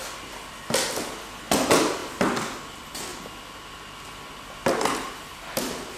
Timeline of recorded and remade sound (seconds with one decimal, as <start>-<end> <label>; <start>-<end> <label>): 0.0-2.0 recorded; 2.0-2.6 remade; 2.6-6.0 recorded